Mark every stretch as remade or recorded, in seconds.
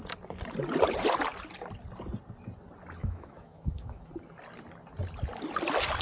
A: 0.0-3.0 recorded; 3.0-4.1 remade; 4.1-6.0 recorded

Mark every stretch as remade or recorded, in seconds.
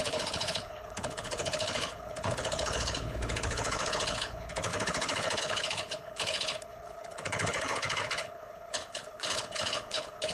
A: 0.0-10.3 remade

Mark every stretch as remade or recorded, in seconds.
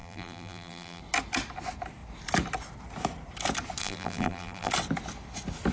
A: 0.0-1.0 remade; 1.0-3.8 recorded; 3.8-4.7 remade; 4.7-5.7 recorded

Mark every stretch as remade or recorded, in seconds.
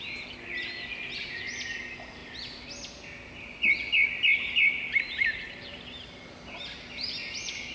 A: 0.0-7.7 recorded